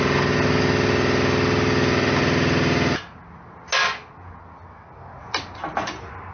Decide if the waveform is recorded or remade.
recorded